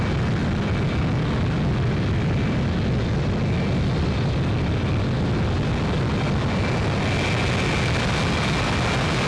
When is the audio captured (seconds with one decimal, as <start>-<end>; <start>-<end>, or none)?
0.0-9.3